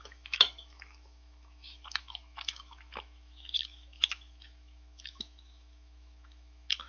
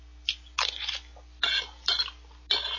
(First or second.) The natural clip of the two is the second